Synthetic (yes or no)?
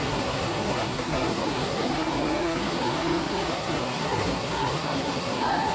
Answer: yes